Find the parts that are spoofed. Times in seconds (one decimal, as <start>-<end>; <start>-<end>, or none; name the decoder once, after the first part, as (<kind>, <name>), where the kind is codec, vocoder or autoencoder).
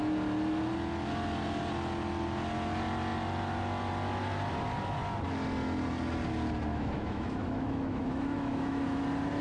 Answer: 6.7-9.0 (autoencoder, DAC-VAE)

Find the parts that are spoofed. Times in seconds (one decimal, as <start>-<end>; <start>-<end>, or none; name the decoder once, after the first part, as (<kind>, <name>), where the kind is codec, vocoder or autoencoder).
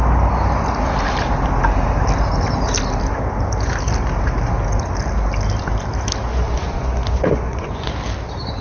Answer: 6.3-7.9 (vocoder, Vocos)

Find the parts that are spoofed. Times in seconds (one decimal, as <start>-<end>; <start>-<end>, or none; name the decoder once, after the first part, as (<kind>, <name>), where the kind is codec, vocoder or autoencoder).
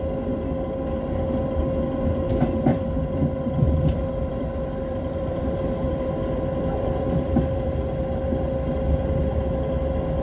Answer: 2.7-7.7 (vocoder, BigVGAN v2)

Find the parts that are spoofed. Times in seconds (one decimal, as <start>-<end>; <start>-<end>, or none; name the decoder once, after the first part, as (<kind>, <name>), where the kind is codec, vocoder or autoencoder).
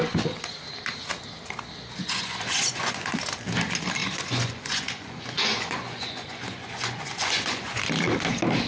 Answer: 2.0-3.2 (vocoder, Vocos); 4.0-7.8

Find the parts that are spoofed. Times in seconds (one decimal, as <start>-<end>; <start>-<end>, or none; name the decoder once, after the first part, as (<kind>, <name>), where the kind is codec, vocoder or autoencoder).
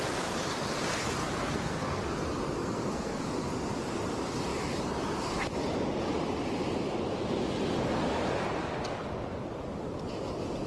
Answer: 1.2-2.0 (codec, SNAC); 2.6-3.2